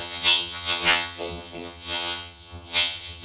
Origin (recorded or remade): remade